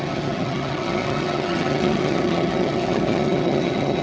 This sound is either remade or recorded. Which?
remade